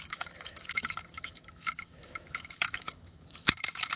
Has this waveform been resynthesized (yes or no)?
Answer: yes